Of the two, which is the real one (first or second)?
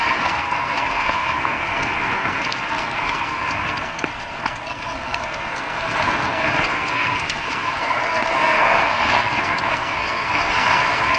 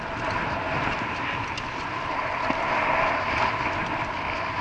second